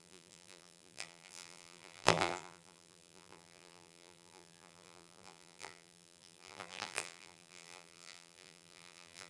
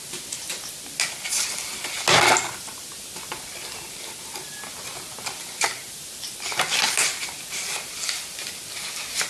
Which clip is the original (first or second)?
second